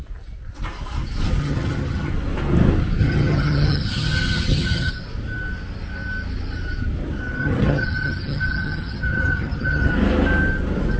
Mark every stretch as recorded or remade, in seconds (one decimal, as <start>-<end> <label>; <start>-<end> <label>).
0.0-1.4 recorded; 1.4-2.1 remade; 2.1-3.0 recorded; 3.0-4.9 remade; 4.9-7.4 recorded; 7.4-9.9 remade; 9.9-11.0 recorded